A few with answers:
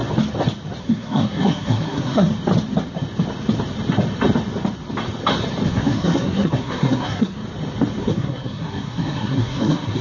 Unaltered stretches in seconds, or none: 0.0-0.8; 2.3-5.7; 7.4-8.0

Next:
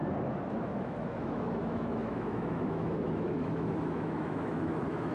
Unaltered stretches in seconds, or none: 0.0-0.6

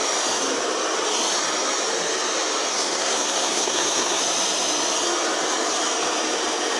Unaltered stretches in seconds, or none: 0.0-2.7; 4.2-6.8

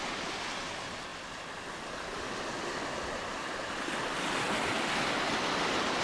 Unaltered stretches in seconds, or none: 0.0-6.0

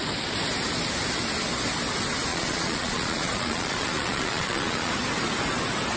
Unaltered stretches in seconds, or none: 0.0-2.3; 4.9-6.0